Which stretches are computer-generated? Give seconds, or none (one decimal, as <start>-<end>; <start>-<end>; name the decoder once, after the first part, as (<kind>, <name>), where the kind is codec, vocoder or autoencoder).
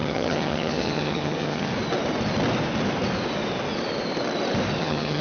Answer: 0.0-1.7 (vocoder, HiFi-GAN); 4.8-5.2